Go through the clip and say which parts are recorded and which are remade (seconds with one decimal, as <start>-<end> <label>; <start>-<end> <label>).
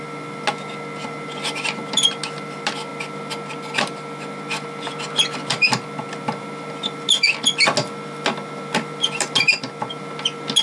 0.0-10.6 recorded